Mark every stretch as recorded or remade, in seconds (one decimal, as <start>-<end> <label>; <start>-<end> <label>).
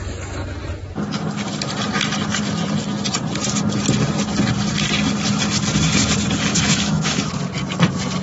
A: 0.0-6.5 recorded; 6.5-7.3 remade; 7.3-8.2 recorded